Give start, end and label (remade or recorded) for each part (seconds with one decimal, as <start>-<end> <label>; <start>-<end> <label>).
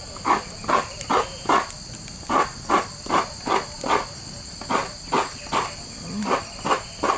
0.0-4.8 recorded; 4.8-6.1 remade; 6.1-7.2 recorded